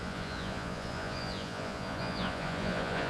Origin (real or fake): fake